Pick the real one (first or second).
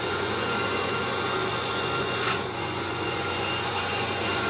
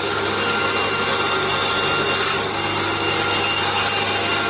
second